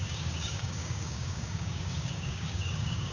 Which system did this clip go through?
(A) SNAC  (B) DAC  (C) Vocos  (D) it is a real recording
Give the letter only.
B